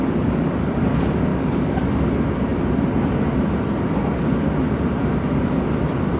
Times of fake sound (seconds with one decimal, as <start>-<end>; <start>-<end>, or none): 0.0-0.8; 1.3-2.0